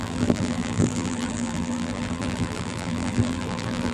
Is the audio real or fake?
fake